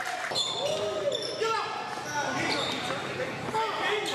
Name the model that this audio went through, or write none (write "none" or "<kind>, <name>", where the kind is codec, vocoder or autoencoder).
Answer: none